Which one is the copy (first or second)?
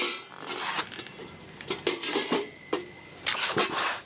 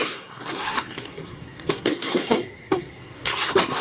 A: second